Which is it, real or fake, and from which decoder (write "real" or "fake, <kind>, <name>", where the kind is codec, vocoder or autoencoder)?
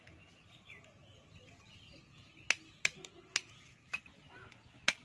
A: real